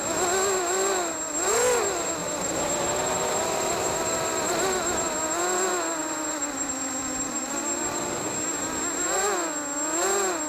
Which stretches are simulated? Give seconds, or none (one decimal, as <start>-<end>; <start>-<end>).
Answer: 2.2-5.4; 6.0-6.7